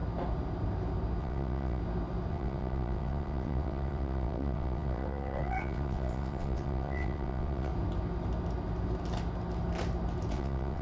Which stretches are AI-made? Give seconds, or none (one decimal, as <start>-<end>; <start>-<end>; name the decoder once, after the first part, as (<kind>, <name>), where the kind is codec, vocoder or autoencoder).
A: 1.2-1.8 (vocoder, WaveNeXt); 2.3-7.7; 10.3-10.8